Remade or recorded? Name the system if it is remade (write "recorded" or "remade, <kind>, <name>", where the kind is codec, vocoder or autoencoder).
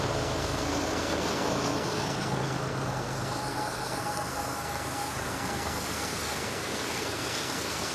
remade, codec, SNAC